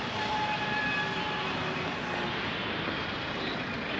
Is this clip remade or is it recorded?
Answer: recorded